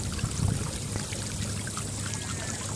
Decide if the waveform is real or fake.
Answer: real